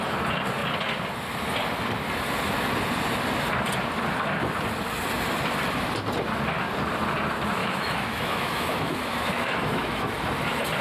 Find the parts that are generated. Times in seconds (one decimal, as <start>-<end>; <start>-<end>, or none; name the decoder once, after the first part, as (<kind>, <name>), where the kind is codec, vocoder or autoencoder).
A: 7.6-10.1 (autoencoder, DAC-VAE)